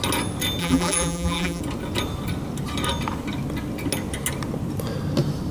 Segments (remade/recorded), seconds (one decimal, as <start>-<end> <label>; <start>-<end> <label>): 0.0-0.6 recorded; 0.6-1.6 remade; 1.6-5.5 recorded